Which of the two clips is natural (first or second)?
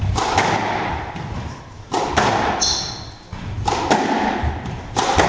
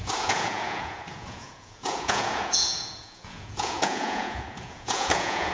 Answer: first